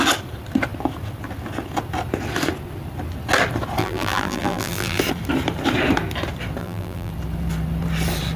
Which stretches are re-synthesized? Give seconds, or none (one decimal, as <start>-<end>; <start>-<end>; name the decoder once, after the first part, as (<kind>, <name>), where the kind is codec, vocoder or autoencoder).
3.8-5.0 (vocoder, BigVGAN v2); 6.6-7.1